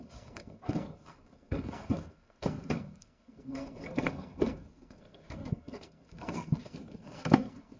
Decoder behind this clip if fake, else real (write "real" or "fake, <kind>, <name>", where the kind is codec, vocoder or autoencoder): fake, codec, SNAC